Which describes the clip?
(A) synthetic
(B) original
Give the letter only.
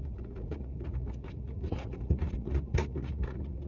A